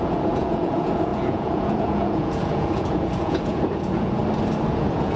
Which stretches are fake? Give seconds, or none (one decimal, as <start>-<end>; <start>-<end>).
0.0-4.2; 4.7-5.2